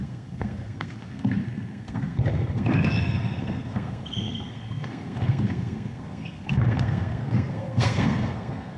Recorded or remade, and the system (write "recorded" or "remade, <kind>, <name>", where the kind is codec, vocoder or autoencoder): remade, codec, SNAC